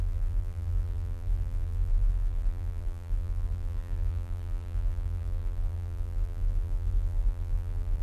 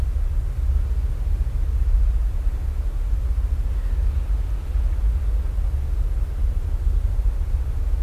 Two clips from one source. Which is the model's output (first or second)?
first